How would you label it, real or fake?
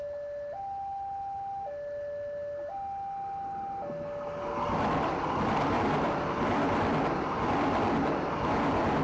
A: real